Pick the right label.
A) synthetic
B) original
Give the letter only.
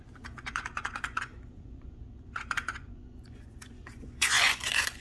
A